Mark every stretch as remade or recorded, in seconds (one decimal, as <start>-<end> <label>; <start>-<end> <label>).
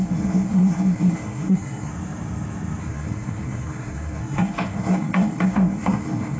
0.0-1.9 remade; 1.9-2.8 recorded; 2.8-6.4 remade